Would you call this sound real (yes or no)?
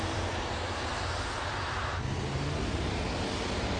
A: yes